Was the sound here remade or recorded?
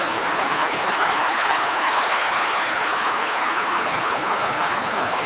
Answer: remade